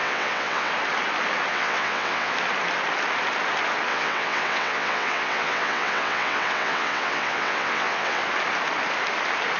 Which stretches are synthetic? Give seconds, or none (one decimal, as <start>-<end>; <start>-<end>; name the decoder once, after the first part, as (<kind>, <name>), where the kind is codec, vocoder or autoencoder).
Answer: 0.0-0.7 (vocoder, WaveNeXt); 1.5-2.3; 3.9-8.2